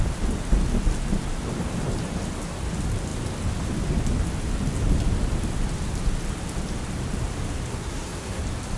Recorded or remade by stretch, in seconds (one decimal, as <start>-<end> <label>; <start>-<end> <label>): 0.0-7.7 recorded; 7.7-8.4 remade; 8.4-8.8 recorded